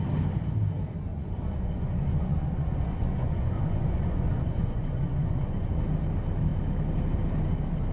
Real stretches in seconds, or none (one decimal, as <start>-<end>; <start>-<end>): 0.0-1.1; 5.8-7.9